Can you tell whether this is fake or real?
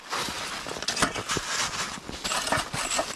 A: real